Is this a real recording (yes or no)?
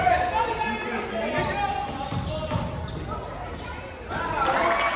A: yes